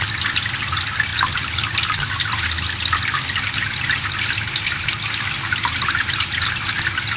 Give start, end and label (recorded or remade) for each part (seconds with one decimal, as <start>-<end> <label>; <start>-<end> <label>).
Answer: 0.0-7.2 recorded